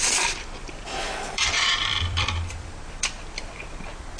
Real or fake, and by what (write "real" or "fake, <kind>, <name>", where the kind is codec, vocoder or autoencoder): fake, vocoder, BigVGAN v2